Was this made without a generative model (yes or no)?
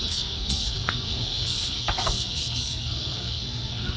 no